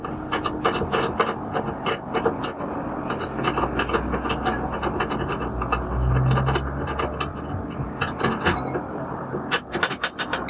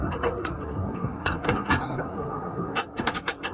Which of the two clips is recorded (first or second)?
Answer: first